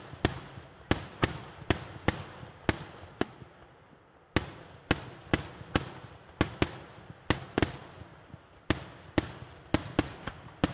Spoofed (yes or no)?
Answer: no